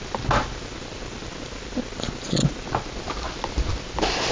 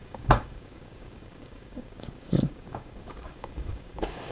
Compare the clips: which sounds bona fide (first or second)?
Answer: first